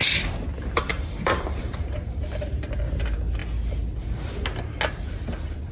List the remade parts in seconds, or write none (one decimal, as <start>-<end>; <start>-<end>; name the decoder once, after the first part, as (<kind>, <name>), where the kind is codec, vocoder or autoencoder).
0.9-2.8 (vocoder, BigVGAN v2)